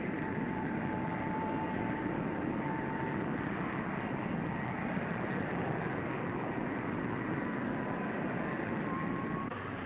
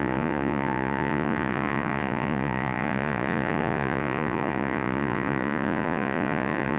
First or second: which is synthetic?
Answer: second